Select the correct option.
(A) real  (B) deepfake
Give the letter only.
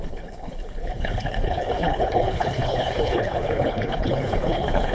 B